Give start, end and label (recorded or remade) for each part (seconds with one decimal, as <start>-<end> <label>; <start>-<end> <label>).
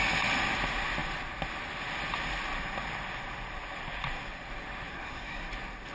0.0-4.9 recorded; 4.9-5.5 remade; 5.5-5.9 recorded